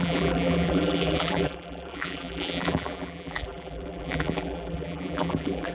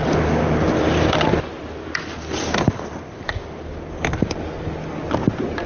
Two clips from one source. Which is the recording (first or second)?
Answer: second